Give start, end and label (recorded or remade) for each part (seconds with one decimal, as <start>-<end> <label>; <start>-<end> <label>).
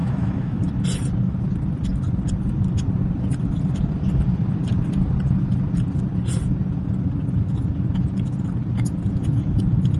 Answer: 0.0-0.6 remade; 0.6-10.0 recorded